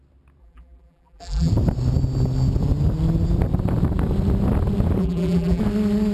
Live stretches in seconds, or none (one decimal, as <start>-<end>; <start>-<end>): 0.0-0.4; 1.5-5.0; 5.6-6.1